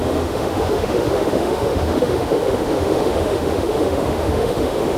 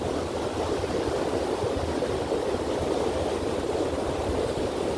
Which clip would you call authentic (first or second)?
second